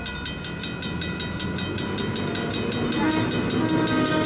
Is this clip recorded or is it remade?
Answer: recorded